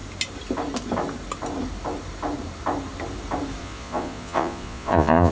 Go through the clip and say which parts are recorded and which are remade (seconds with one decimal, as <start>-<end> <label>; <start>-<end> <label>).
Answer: 0.0-3.6 recorded; 3.6-5.3 remade